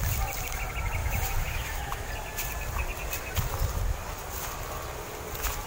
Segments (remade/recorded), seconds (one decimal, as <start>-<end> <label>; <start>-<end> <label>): 0.0-1.0 recorded; 1.0-2.1 remade; 2.1-5.7 recorded